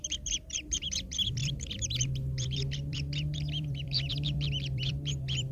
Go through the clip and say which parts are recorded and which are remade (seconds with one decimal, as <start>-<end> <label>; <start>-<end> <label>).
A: 0.0-5.5 remade

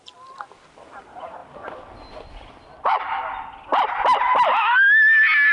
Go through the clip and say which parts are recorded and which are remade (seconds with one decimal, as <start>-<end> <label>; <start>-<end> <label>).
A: 0.0-5.5 recorded

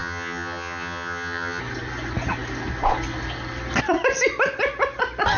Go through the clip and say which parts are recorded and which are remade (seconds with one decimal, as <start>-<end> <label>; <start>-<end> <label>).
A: 0.0-1.6 remade; 1.6-5.4 recorded

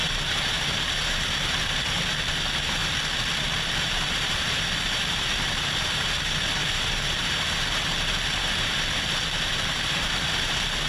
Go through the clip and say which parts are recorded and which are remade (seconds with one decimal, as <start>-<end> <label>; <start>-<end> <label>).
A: 0.0-2.8 remade; 2.8-3.8 recorded; 3.8-10.9 remade

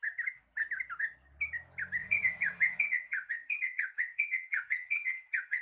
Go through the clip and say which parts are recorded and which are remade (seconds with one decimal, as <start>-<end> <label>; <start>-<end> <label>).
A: 0.0-2.0 recorded; 2.0-5.6 remade

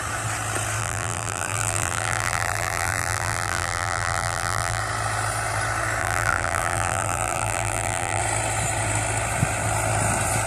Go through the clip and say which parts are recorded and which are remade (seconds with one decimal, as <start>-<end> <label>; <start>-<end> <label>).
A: 0.0-0.8 recorded; 0.8-4.8 remade; 4.8-6.0 recorded; 6.0-8.2 remade; 8.2-10.5 recorded

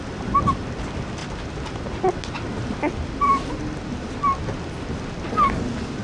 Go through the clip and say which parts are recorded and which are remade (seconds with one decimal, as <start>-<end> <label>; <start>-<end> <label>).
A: 0.0-6.0 recorded

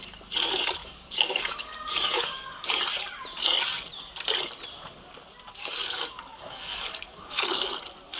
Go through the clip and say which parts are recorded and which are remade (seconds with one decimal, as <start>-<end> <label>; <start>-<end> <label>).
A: 0.0-0.8 recorded; 0.8-2.8 remade; 2.8-5.5 recorded; 5.5-7.7 remade; 7.7-8.2 recorded